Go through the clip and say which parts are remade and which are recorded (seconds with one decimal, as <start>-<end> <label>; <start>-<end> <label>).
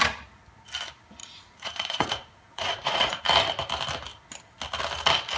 0.0-1.2 recorded; 1.2-3.2 remade; 3.2-5.4 recorded